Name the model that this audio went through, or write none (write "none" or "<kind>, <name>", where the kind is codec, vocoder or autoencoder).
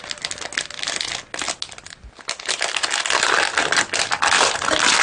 none